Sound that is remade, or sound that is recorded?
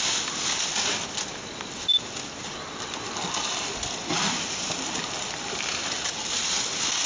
recorded